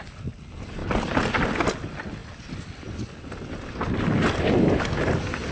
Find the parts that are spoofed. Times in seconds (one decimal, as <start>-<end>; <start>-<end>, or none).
none